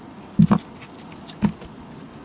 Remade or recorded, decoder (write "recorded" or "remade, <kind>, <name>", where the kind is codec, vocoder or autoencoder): recorded